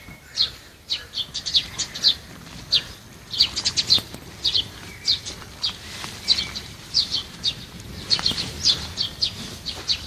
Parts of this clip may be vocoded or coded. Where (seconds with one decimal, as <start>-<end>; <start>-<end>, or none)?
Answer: 0.0-1.5; 6.6-10.1

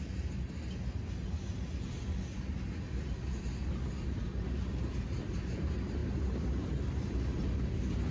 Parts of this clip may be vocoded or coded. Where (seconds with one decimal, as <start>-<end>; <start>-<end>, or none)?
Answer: none

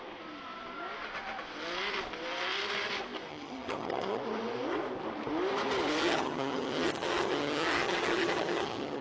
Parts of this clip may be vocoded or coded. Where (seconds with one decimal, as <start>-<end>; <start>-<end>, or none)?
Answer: 3.3-4.2; 6.0-9.0

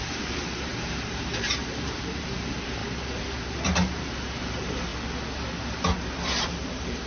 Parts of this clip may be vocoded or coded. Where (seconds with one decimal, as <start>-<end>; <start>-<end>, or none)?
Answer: 0.0-2.8; 3.4-4.9; 6.4-7.1

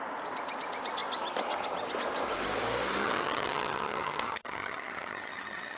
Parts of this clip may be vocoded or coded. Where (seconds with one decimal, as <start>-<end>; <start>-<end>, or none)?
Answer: 3.0-5.8

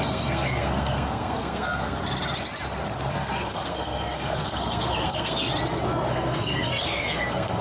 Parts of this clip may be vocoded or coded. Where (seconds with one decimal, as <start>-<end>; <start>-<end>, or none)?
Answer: 0.0-2.0; 3.1-5.5; 6.1-7.6

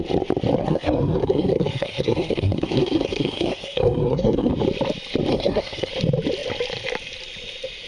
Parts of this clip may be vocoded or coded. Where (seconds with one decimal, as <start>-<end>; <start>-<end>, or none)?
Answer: 0.6-4.5; 5.3-5.9